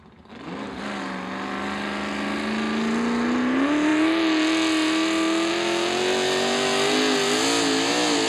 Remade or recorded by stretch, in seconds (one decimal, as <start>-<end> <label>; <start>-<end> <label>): 0.0-8.3 recorded